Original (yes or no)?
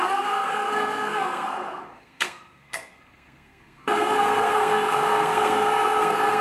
no